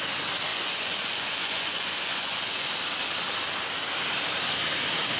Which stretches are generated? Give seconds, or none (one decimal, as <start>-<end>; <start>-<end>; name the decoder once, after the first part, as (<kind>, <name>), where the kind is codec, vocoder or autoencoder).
0.5-2.7 (vocoder, Vocos)